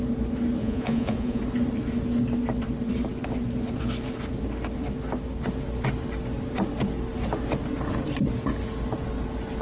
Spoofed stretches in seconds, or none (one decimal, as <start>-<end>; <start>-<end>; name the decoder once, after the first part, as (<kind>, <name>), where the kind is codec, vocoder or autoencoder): 0.6-1.4 (vocoder, Vocos)